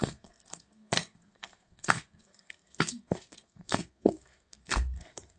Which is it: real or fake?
fake